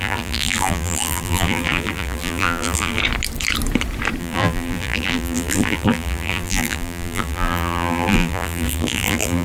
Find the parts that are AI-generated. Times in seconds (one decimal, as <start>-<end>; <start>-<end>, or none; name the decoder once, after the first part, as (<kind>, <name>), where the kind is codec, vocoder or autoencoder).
0.0-3.0 (vocoder, BigVGAN v2); 4.2-9.4